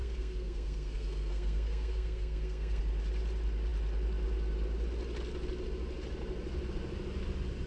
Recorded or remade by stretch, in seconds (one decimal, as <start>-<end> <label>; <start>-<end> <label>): 0.0-2.8 remade; 2.8-7.7 recorded